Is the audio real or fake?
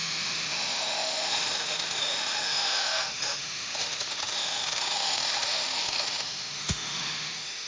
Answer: fake